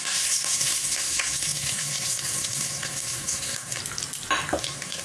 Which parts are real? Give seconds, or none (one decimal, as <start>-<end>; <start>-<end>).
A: 3.8-4.6